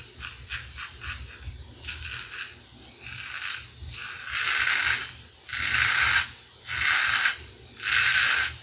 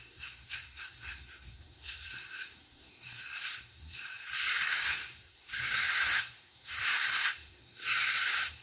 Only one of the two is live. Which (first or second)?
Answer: first